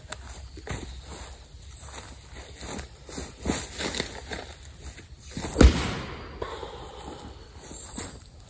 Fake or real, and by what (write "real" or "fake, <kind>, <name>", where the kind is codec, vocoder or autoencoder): real